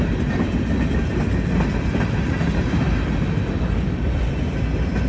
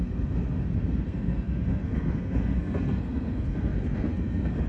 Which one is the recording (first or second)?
first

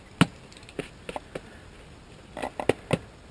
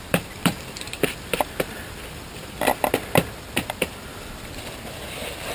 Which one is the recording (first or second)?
first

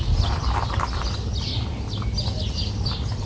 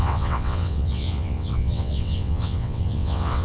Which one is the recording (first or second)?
first